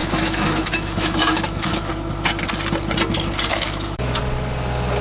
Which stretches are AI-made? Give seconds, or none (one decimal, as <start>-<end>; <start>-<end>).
0.0-1.9; 3.5-4.2